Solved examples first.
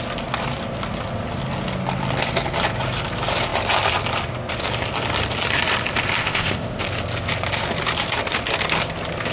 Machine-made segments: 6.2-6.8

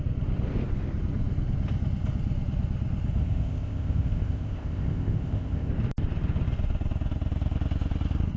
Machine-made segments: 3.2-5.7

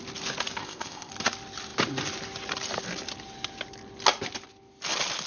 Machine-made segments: 0.6-1.1

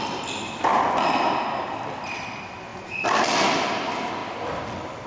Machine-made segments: none